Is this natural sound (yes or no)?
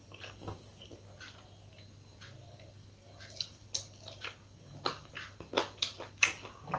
yes